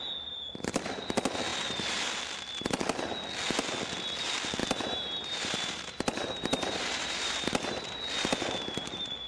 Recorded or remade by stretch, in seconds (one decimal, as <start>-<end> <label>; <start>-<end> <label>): 0.0-4.6 recorded; 4.6-8.0 remade; 8.0-9.3 recorded